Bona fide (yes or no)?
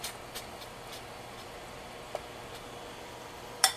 yes